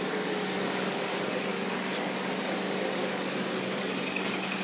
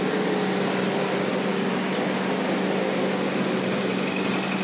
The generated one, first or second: first